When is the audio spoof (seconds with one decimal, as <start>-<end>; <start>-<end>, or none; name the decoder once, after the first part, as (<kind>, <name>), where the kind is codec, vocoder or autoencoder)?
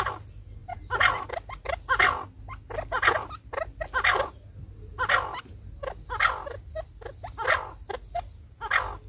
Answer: 0.6-1.3 (vocoder, BigVGAN v2)